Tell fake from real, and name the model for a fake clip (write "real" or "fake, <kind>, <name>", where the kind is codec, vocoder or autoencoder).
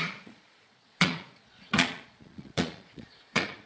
fake, vocoder, Vocos